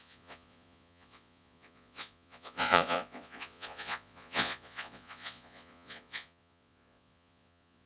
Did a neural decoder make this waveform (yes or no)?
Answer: yes